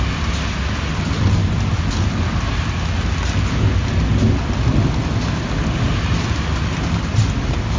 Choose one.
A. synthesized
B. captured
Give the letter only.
B